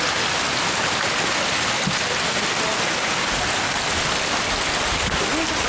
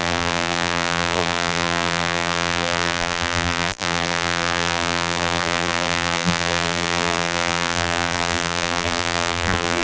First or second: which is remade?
second